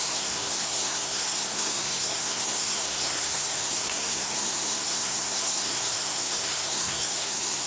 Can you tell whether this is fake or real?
fake